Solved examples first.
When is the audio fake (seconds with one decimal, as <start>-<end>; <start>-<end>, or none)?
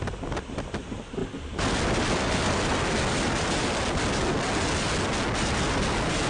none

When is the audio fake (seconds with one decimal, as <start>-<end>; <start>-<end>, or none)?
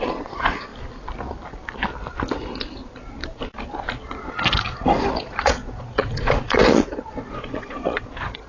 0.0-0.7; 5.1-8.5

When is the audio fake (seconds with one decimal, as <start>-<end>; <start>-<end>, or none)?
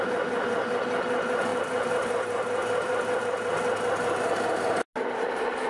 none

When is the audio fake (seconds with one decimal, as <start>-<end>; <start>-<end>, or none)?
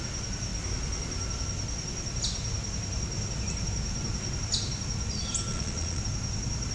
5.5-6.0